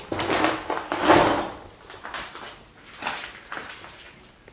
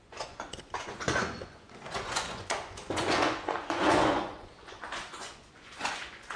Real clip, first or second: first